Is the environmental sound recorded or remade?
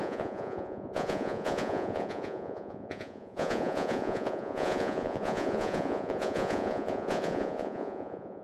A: remade